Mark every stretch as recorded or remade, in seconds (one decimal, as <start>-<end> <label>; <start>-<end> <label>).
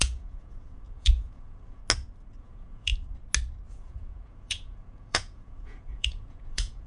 0.0-1.8 remade; 1.8-2.4 recorded; 2.4-2.9 remade; 2.9-3.7 recorded; 3.7-6.9 remade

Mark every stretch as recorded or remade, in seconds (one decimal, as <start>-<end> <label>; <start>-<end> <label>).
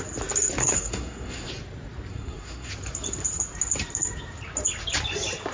0.0-0.6 recorded; 0.6-1.5 remade; 1.5-2.1 recorded; 2.1-2.7 remade; 2.7-5.5 recorded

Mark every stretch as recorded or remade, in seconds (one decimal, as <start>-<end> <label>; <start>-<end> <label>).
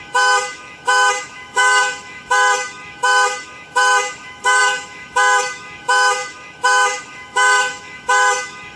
0.0-8.8 remade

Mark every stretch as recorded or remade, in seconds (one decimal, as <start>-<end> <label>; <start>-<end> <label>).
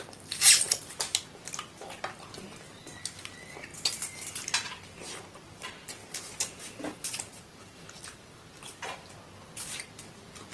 0.0-6.0 recorded; 6.0-9.1 remade; 9.1-10.5 recorded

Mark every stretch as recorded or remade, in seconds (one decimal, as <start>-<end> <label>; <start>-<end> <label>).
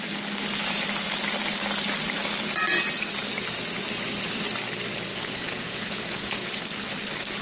0.0-5.1 recorded; 5.1-6.6 remade; 6.6-7.4 recorded